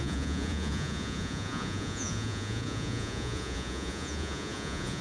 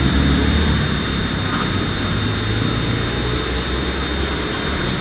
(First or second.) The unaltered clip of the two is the second